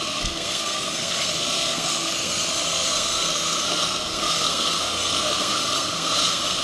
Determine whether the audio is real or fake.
fake